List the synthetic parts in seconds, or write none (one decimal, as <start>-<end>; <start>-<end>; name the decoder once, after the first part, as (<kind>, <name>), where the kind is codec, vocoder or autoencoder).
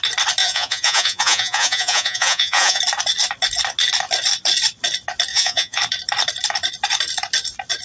0.4-2.8 (vocoder, Vocos); 5.3-5.8